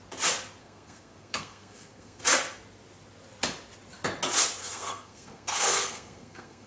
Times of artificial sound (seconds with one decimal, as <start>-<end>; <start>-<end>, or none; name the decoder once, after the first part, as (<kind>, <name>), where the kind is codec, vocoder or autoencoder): 0.6-2.2 (codec, SNAC); 4.6-6.7